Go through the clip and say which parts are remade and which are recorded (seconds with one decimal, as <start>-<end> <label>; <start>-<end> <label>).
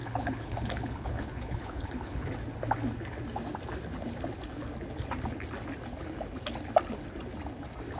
0.0-2.3 remade; 2.3-8.0 recorded